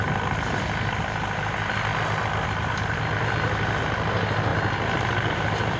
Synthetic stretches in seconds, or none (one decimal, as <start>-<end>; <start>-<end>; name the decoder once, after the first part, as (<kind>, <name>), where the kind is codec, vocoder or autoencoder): none